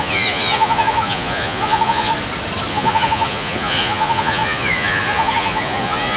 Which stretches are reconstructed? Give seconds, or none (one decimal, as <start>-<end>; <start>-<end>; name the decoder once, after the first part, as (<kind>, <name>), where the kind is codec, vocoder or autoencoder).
0.0-2.1 (vocoder, Vocos); 2.7-6.2